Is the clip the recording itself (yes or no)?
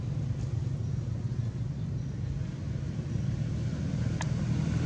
yes